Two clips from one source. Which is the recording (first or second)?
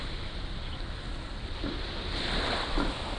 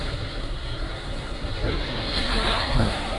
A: first